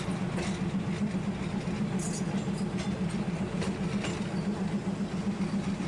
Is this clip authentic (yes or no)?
yes